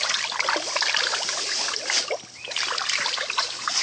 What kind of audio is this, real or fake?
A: real